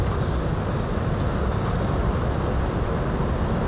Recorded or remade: recorded